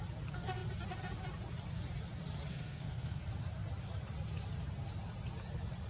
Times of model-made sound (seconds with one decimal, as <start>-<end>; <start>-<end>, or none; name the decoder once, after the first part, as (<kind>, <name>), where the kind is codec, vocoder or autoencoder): 2.5-3.2 (codec, SNAC)